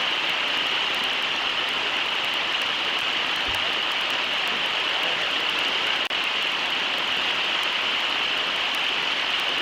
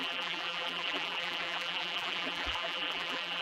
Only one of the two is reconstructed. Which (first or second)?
second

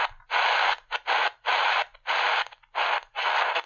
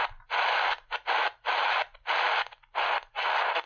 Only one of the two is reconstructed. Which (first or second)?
second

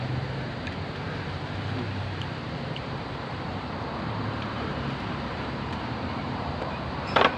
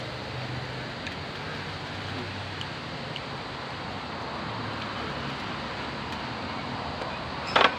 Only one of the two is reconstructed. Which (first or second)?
first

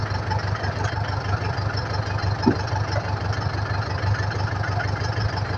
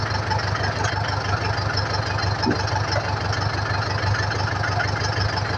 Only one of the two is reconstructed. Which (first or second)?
first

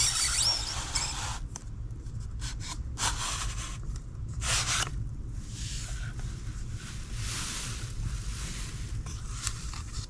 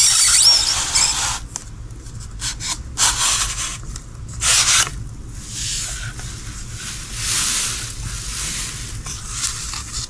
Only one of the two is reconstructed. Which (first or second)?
first